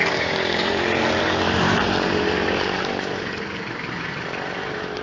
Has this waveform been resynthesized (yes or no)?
yes